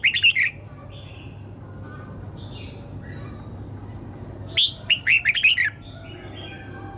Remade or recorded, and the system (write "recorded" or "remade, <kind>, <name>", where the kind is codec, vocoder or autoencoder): recorded